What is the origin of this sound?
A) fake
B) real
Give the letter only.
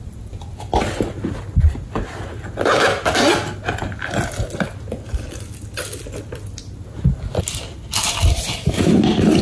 B